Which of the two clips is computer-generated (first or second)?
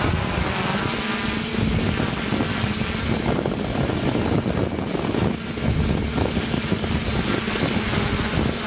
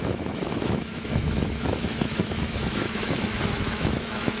second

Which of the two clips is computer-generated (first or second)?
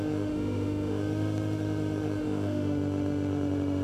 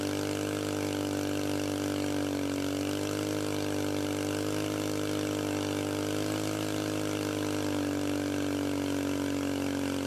first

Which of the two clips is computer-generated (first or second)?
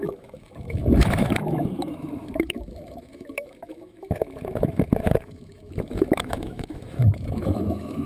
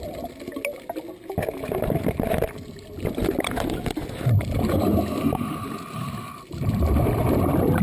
first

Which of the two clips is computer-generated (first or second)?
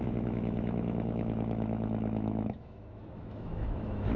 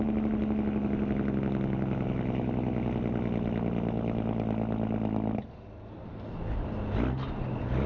first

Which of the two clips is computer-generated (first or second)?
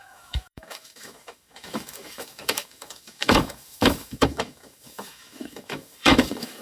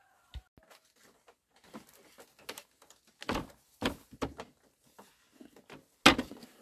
first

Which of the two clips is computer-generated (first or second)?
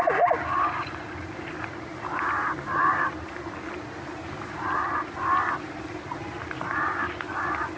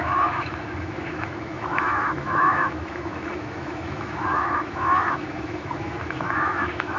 second